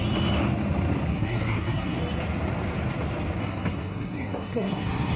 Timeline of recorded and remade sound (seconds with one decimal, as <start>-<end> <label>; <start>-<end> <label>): 0.0-1.1 recorded; 1.1-2.0 remade; 2.0-3.4 recorded; 3.4-5.2 remade